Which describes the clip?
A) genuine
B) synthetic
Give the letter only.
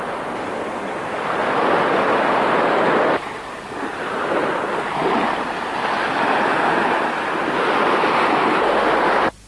A